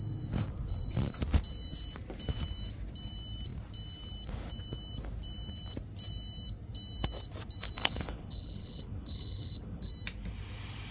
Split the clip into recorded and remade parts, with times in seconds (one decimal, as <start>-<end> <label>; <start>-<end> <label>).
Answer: 0.0-7.8 recorded; 7.8-9.9 remade; 9.9-10.9 recorded